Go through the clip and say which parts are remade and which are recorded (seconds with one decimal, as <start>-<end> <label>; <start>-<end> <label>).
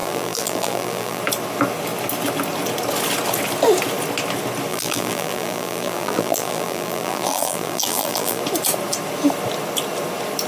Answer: 0.0-1.2 remade; 1.2-4.7 recorded; 4.7-8.4 remade; 8.4-10.5 recorded